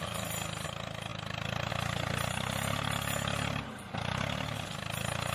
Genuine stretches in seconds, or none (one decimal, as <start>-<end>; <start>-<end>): 0.0-5.3